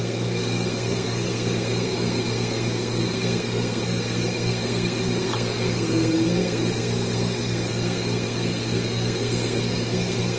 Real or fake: fake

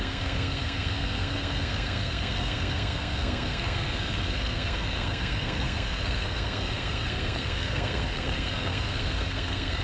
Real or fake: fake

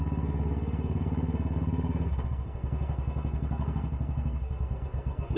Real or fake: fake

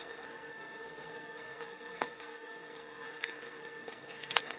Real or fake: fake